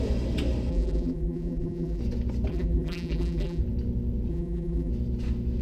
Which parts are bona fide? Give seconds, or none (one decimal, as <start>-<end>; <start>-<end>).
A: 0.0-0.7; 2.0-2.5; 3.6-4.3; 4.9-5.6